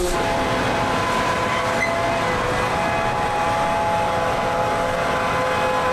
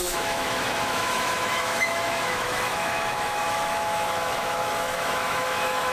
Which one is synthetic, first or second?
second